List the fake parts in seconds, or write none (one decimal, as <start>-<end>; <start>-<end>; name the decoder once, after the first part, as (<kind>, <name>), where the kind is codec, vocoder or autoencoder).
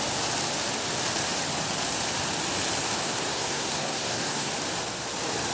3.0-4.5 (codec, SNAC)